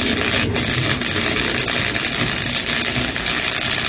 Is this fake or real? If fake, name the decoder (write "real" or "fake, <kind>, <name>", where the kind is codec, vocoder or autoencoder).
real